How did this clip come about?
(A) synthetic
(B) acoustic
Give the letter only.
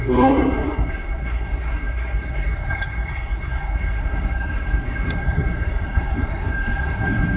A